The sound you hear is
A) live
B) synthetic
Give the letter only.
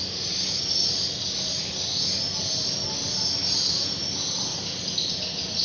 A